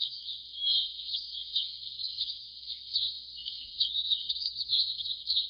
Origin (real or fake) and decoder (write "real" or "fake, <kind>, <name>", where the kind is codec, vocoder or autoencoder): fake, codec, SNAC